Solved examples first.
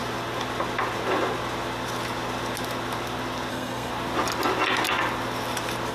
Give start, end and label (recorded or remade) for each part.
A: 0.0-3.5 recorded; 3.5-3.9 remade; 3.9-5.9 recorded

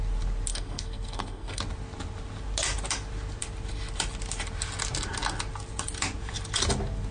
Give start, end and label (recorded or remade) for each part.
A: 0.0-0.5 recorded; 0.5-1.6 remade; 1.6-7.1 recorded

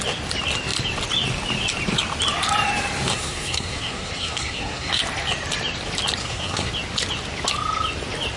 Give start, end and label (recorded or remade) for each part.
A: 0.0-3.1 recorded; 3.1-5.0 remade; 5.0-6.2 recorded; 6.2-6.7 remade; 6.7-8.4 recorded

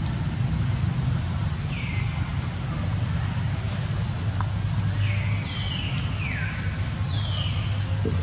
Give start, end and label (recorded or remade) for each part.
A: 0.0-8.2 recorded

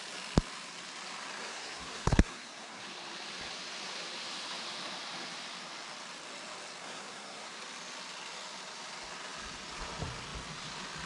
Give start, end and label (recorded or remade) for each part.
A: 0.0-1.4 recorded; 1.4-2.8 remade; 2.8-6.8 recorded; 6.8-7.6 remade; 7.6-11.1 recorded

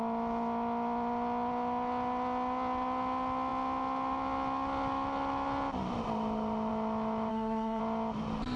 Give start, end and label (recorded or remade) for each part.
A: 0.0-7.3 recorded; 7.3-7.8 remade; 7.8-8.6 recorded